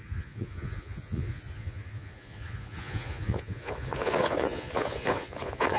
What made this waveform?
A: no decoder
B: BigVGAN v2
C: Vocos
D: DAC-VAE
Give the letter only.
C